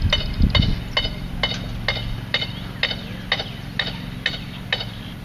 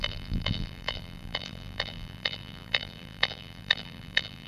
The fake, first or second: second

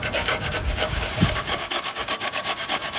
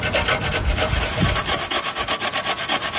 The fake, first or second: first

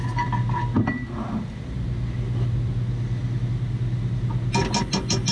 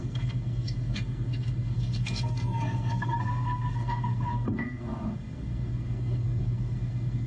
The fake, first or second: second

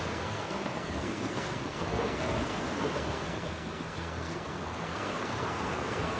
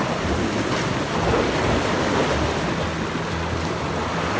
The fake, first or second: first